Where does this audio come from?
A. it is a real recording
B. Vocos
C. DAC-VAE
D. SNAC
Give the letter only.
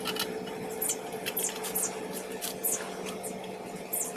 A